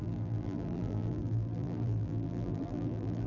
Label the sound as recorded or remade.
remade